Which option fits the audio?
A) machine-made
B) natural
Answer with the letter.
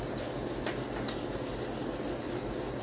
B